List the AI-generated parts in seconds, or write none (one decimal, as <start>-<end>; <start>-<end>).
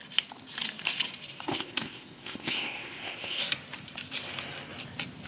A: 1.5-3.4